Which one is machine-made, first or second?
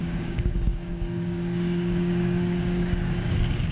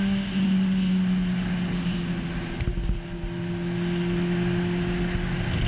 first